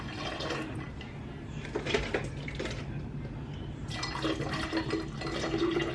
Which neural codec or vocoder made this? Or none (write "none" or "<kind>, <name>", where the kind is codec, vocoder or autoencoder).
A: none